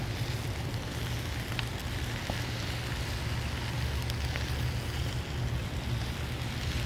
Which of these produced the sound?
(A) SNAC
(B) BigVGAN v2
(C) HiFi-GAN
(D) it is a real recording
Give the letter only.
D